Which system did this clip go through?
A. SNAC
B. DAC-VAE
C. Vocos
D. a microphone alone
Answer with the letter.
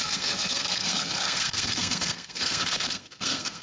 A